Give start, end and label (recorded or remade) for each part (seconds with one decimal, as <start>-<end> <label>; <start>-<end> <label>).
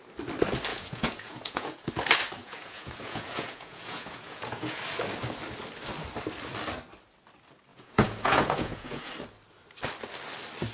0.0-0.7 recorded; 0.7-1.9 remade; 1.9-2.4 recorded; 2.4-4.8 remade; 4.8-7.7 recorded; 7.7-9.1 remade; 9.1-10.7 recorded